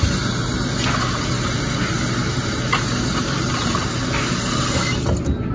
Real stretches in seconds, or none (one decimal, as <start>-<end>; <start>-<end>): 0.0-2.2; 4.2-5.5